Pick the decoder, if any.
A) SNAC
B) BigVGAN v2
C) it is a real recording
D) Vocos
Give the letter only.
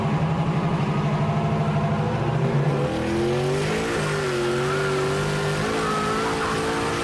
C